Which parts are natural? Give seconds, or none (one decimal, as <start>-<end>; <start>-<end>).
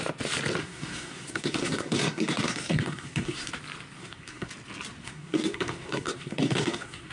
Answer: 0.0-0.6; 3.5-4.0; 4.5-5.0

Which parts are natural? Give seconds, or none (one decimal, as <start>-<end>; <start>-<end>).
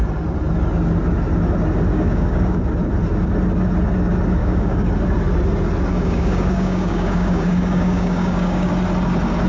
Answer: 0.0-1.9; 2.6-4.4; 4.9-5.9; 8.7-9.5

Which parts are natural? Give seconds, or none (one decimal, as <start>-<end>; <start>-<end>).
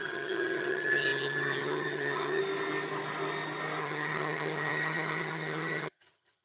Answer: 2.4-3.8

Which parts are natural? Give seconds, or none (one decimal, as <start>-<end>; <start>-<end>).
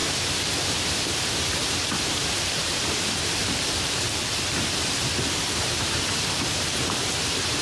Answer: 3.4-5.4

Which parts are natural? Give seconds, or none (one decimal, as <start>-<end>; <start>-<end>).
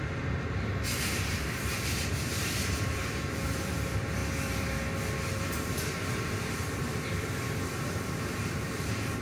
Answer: 4.2-5.3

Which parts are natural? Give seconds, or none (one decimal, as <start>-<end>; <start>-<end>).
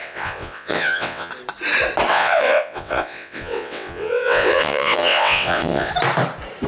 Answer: 1.3-2.1; 5.9-6.7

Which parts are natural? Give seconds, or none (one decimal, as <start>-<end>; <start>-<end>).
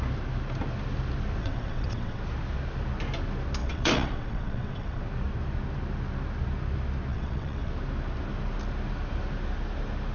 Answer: 0.0-1.4; 2.2-3.6; 5.0-7.1; 7.7-10.1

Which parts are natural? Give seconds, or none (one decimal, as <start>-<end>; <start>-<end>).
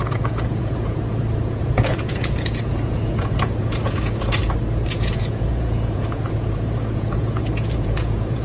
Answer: 4.4-4.9